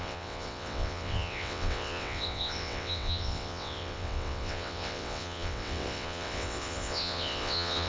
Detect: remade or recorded remade